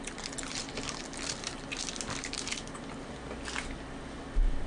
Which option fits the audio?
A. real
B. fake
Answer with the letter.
A